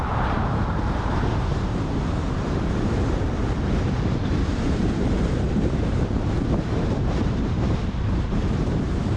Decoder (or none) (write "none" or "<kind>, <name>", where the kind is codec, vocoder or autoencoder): vocoder, BigVGAN v2